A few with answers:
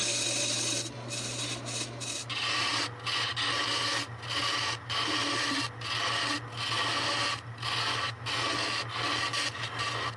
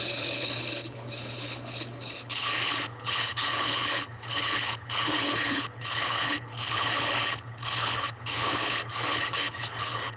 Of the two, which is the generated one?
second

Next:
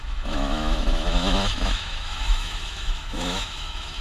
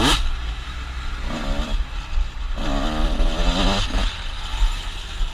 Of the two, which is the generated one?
first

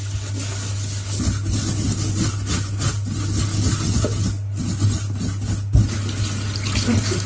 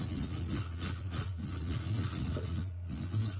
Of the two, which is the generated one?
second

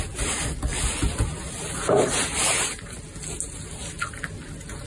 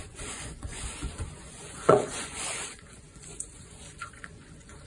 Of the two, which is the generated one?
second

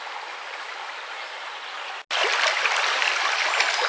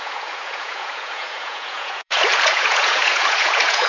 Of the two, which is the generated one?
second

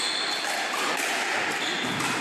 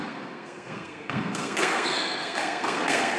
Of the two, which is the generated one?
second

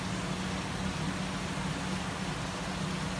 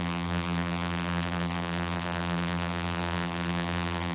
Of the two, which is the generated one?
second